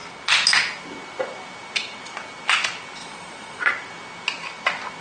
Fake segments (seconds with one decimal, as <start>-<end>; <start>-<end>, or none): 3.0-3.7